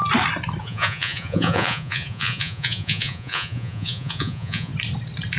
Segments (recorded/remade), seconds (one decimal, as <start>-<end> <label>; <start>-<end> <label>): 0.0-0.6 recorded; 0.6-4.7 remade; 4.7-5.4 recorded